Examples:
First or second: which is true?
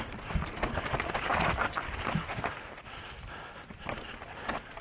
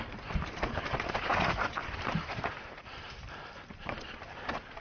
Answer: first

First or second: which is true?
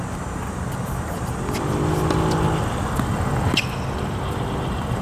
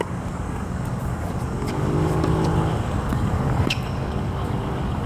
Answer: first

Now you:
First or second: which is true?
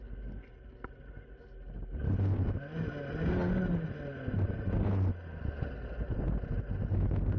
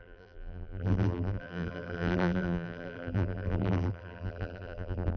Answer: first